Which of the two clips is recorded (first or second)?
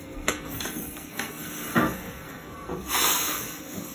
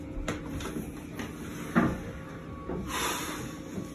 second